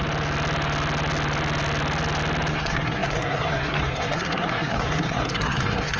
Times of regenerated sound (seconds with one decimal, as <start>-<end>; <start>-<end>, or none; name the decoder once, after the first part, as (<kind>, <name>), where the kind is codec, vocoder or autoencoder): 2.5-6.0 (codec, SNAC)